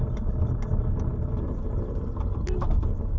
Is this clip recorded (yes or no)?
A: yes